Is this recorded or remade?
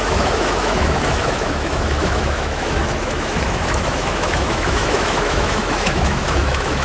remade